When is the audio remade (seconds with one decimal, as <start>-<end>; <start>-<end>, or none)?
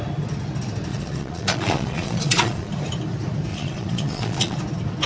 0.9-2.7; 3.5-4.6